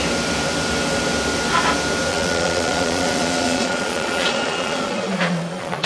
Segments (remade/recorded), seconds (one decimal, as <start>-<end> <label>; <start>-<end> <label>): 0.0-2.1 recorded; 2.1-5.9 remade